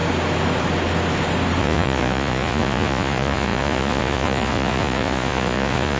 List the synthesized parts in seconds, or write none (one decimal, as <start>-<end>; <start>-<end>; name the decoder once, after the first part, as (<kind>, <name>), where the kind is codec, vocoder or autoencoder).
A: 1.6-6.0 (vocoder, Vocos)